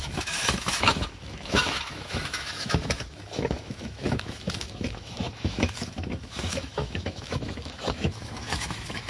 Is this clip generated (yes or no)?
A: yes